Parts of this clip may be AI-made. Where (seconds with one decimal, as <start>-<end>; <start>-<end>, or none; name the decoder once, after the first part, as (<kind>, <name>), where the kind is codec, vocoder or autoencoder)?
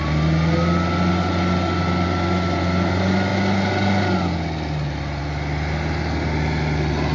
none